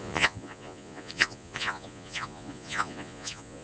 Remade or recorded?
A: remade